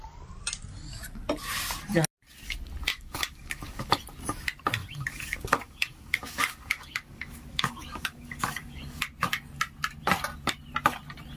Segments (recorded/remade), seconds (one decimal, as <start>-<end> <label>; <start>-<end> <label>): 0.0-2.9 recorded; 2.9-3.9 remade; 3.9-4.8 recorded; 4.8-9.0 remade; 9.0-11.4 recorded